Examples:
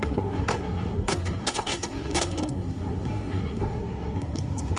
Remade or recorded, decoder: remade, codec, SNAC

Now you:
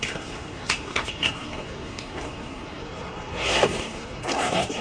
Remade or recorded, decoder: remade, codec, SNAC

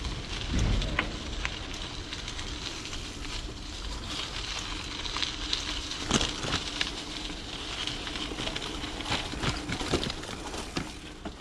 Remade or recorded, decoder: recorded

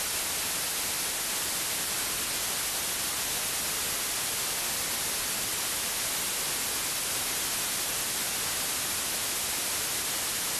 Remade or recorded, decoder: recorded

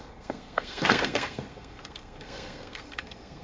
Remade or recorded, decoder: remade, codec, SNAC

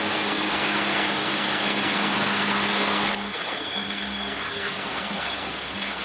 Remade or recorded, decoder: remade, codec, SNAC